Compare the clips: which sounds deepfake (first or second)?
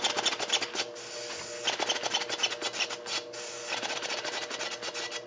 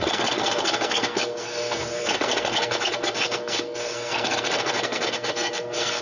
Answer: second